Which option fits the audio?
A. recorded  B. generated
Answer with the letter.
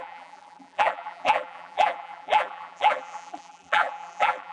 B